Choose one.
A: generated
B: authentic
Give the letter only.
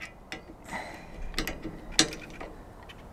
B